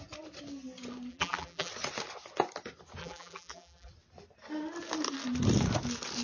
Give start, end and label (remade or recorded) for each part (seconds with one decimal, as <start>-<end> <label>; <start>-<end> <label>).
0.0-1.1 recorded; 1.1-1.7 remade; 1.7-3.0 recorded; 3.0-3.9 remade; 3.9-6.2 recorded